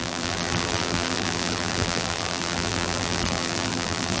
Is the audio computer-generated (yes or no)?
yes